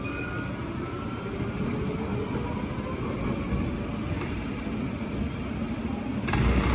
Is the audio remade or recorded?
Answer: recorded